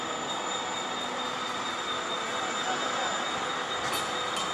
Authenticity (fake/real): real